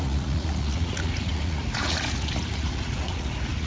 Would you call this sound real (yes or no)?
no